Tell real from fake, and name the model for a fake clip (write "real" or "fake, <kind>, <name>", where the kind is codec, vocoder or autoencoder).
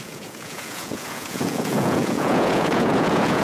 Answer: fake, vocoder, Vocos